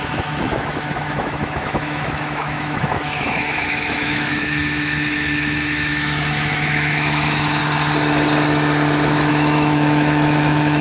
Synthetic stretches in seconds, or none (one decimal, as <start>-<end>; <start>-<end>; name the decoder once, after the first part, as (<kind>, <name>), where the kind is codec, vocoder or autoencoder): 0.0-7.6 (autoencoder, DAC-VAE); 9.3-10.8